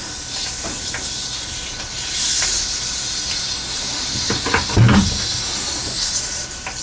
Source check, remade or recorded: recorded